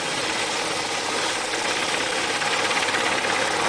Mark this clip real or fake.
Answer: real